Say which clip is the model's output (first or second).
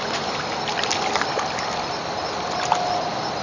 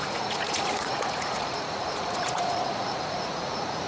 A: second